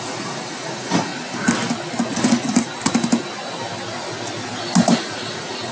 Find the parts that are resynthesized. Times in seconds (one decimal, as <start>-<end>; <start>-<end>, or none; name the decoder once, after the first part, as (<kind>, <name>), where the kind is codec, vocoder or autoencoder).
0.0-1.1 (vocoder, Vocos); 2.1-2.7; 5.0-5.7

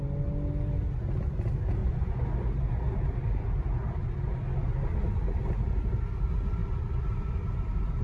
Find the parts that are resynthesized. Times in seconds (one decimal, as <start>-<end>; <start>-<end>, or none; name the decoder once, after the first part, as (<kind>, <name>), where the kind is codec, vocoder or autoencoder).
1.8-2.3 (vocoder, Vocos)